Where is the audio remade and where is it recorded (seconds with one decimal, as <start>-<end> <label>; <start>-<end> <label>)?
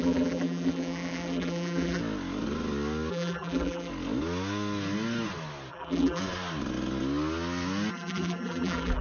0.0-2.0 remade; 2.0-3.1 recorded; 3.1-3.9 remade; 3.9-5.7 recorded; 5.7-6.2 remade; 6.2-7.9 recorded; 7.9-9.0 remade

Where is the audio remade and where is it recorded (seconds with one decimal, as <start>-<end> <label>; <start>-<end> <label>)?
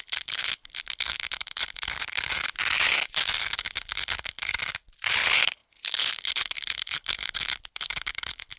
0.0-2.3 remade; 2.3-3.4 recorded; 3.4-4.5 remade; 4.5-5.1 recorded; 5.1-8.6 remade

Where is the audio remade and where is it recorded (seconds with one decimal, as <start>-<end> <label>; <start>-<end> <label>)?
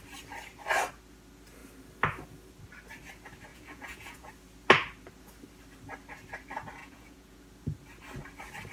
0.0-3.5 recorded; 3.5-4.3 remade; 4.3-6.8 recorded; 6.8-7.4 remade; 7.4-8.7 recorded